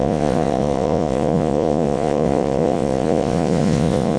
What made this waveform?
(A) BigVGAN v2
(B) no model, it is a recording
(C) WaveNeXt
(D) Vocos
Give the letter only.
D